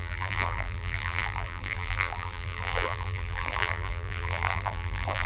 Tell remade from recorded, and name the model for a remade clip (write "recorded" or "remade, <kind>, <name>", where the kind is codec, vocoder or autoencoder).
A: remade, vocoder, BigVGAN v2